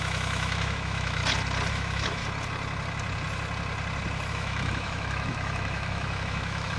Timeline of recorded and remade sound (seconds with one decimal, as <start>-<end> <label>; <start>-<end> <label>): 0.0-1.2 remade; 1.2-1.7 recorded; 1.7-2.2 remade; 2.2-4.3 recorded; 4.3-6.8 remade